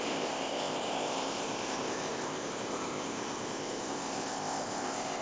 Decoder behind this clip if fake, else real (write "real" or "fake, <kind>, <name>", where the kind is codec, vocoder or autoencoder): fake, codec, ZipCodec